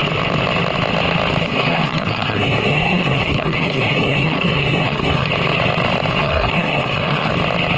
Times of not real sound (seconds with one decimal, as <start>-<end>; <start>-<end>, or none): 1.4-5.3; 6.2-7.3